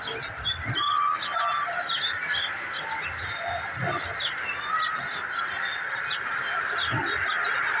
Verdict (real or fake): real